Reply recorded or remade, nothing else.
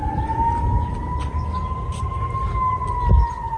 recorded